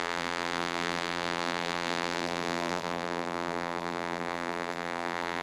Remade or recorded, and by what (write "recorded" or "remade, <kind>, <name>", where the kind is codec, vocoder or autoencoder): remade, vocoder, BigVGAN v2